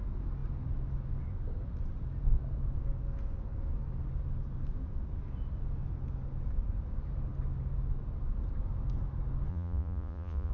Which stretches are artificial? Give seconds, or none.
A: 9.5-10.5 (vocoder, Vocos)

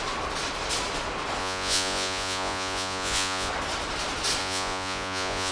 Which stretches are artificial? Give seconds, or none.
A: 1.4-3.5 (vocoder, Vocos); 4.4-5.5

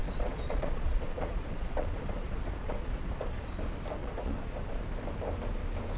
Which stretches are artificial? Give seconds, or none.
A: 0.0-3.5 (vocoder, Vocos); 4.0-4.8

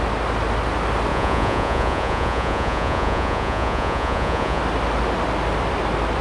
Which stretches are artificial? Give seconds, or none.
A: 1.1-4.6 (vocoder, Vocos)